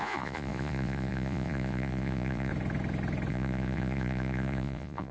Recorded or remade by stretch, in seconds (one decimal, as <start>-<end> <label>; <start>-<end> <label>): 0.0-2.5 remade; 2.5-3.3 recorded; 3.3-5.1 remade